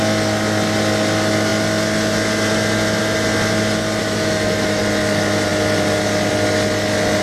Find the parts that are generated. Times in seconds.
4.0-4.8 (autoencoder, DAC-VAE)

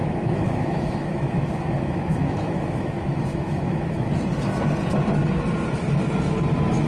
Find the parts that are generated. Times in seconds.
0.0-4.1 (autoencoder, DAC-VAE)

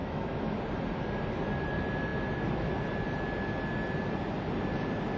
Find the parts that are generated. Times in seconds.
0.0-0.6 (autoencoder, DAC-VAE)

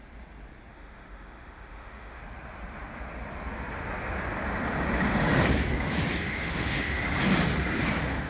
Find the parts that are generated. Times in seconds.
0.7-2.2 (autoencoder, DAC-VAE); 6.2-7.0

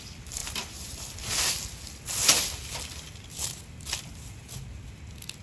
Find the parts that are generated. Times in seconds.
none

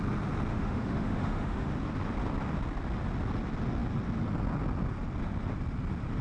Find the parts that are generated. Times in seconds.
0.5-1.7 (autoencoder, DAC-VAE)

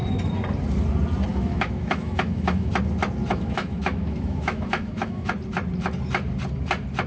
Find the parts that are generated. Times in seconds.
1.3-2.7 (autoencoder, DAC-VAE); 3.3-5.3

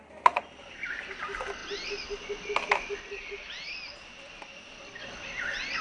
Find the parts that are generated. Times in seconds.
none